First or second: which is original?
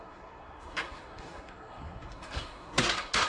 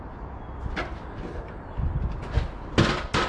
second